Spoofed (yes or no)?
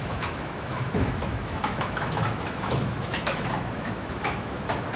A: yes